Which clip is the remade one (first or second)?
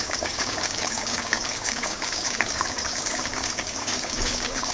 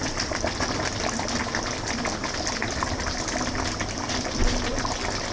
first